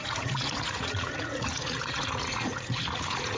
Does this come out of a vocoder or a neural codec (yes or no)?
yes